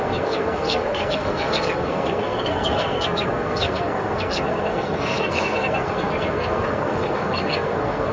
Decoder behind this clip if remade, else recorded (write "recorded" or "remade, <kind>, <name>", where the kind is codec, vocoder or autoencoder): remade, codec, SNAC